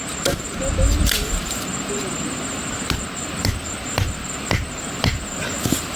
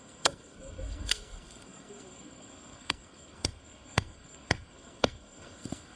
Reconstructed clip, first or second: second